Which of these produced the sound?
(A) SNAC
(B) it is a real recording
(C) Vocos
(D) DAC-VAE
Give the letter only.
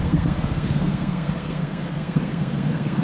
A